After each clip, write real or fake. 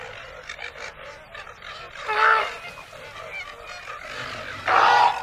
real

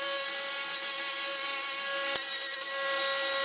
real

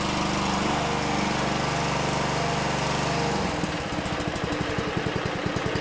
real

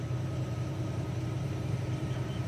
fake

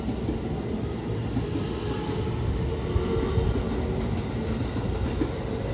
real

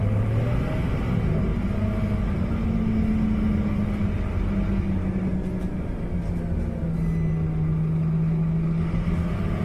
real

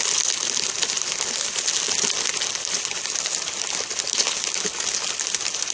real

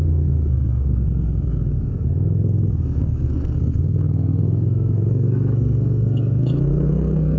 fake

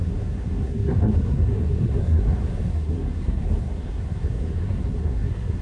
fake